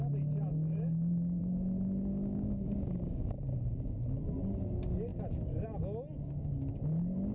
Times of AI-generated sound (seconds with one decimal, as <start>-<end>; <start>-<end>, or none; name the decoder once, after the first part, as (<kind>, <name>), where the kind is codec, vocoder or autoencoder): 0.5-1.4 (codec, DAC); 2.1-3.5

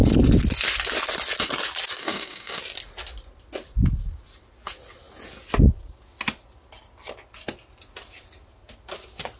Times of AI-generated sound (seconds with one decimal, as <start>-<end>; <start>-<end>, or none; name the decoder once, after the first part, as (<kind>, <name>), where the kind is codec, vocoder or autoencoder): 2.0-2.6 (codec, DAC)